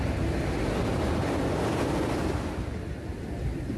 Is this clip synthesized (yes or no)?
no